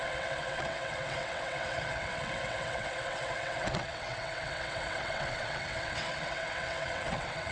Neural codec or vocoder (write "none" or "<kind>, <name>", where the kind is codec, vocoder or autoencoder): vocoder, WaveNeXt